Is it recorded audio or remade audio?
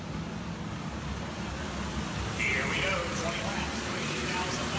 recorded